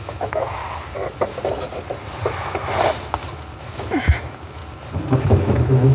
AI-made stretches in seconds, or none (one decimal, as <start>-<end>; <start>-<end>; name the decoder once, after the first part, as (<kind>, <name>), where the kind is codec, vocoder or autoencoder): 0.0-0.6 (autoencoder, DAC-VAE); 3.6-4.6; 5.2-5.9